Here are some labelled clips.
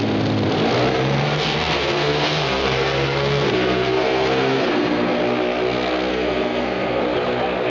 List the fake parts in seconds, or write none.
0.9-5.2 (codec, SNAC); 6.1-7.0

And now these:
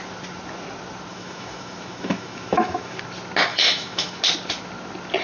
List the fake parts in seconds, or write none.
1.1-3.0 (autoencoder, DAC-VAE); 3.5-4.2

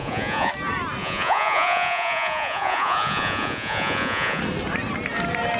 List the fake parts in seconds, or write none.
0.0-0.5 (vocoder, Vocos); 1.0-4.4

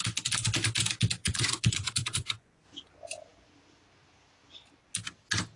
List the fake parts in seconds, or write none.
1.2-2.6 (vocoder, Vocos)